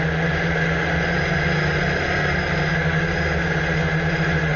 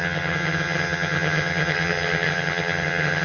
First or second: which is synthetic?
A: second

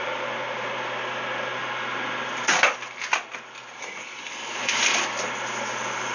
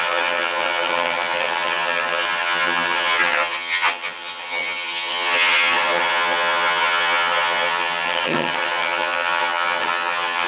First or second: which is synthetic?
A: second